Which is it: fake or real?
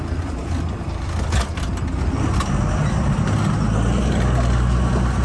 real